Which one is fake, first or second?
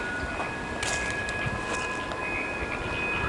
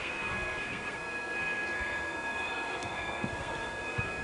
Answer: second